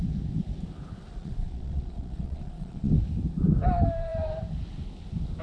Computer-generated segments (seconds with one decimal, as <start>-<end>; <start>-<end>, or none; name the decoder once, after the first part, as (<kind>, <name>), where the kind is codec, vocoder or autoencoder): 1.1-2.9 (vocoder, Vocos)